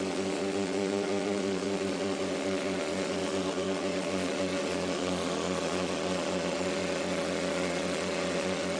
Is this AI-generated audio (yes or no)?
yes